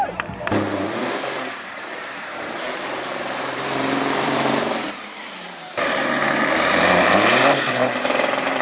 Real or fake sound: fake